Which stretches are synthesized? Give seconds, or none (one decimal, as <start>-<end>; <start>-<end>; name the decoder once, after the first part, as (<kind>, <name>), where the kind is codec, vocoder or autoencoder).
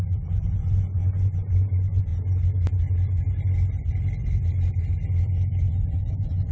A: 0.0-2.1 (vocoder, Vocos); 5.7-6.5